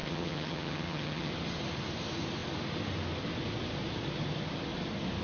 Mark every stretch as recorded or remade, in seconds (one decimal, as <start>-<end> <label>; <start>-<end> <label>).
0.0-1.3 remade; 1.3-5.2 recorded